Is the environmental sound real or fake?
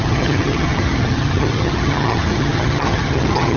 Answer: fake